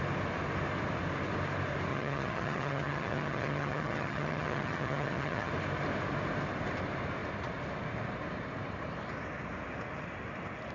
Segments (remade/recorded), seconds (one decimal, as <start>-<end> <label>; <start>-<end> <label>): 0.0-1.9 recorded; 1.9-5.5 remade; 5.5-10.7 recorded